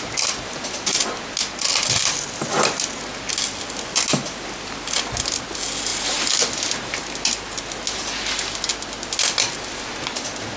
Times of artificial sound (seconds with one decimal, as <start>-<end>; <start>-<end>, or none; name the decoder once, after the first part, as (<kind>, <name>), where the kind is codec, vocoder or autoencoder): none